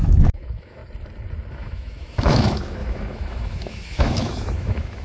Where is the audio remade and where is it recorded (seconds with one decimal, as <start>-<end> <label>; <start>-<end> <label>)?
0.0-0.8 remade; 0.8-1.5 recorded; 1.5-5.0 remade